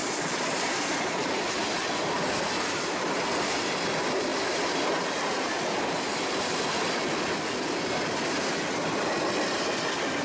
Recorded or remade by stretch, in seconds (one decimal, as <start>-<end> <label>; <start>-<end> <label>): 0.0-10.2 recorded